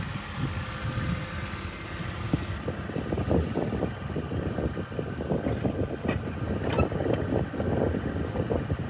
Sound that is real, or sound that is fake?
real